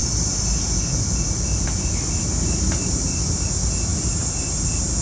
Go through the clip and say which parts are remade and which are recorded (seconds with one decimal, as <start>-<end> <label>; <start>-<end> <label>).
0.0-5.0 recorded